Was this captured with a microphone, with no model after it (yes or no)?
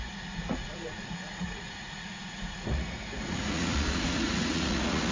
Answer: no